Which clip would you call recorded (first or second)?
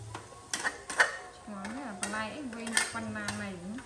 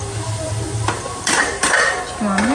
first